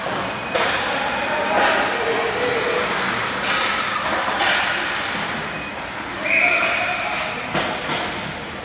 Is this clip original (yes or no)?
yes